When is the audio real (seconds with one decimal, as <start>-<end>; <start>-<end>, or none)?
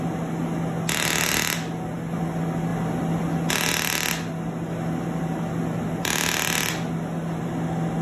0.0-8.0